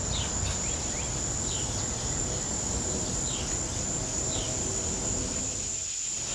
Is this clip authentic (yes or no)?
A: yes